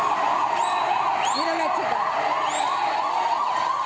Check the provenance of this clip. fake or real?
real